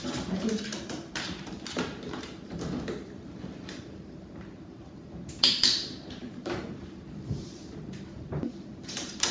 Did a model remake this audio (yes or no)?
yes